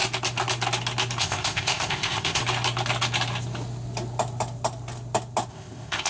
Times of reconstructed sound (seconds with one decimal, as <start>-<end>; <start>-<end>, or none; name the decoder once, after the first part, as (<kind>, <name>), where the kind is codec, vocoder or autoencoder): 1.2-2.4 (codec, ZipCodec); 5.5-6.1